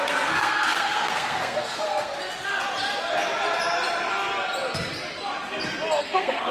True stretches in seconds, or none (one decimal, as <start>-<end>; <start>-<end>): 2.1-6.0

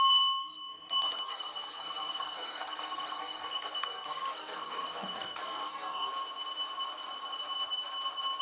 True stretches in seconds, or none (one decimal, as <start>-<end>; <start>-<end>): 6.1-8.4

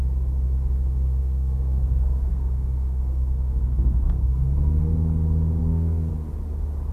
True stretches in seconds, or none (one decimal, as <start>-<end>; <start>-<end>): 0.0-1.2; 4.9-5.6; 6.1-6.9

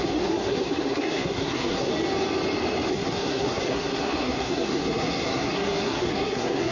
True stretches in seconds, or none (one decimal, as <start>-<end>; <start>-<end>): 1.9-2.9

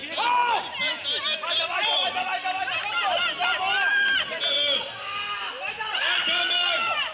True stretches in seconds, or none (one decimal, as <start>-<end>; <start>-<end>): 0.0-7.1

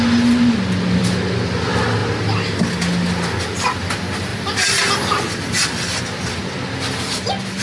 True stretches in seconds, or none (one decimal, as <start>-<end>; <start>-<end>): 0.0-7.6